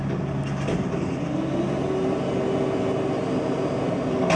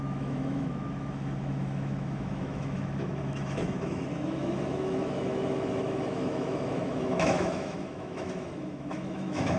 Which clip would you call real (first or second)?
first